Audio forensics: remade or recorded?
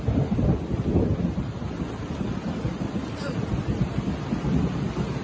recorded